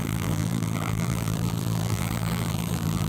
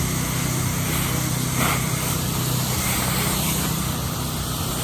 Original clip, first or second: second